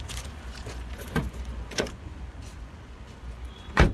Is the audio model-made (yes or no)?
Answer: yes